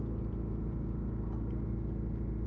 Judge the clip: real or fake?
real